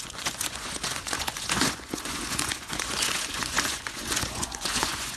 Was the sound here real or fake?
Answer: fake